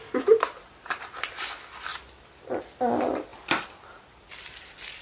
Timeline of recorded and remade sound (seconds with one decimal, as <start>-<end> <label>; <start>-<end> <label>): 0.0-5.0 recorded